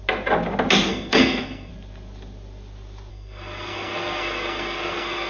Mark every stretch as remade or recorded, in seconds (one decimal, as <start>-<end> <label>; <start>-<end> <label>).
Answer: 0.0-0.9 recorded; 0.9-1.7 remade; 1.7-3.1 recorded; 3.1-5.3 remade